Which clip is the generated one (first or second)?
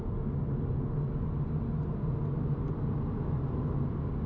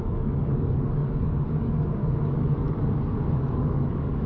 second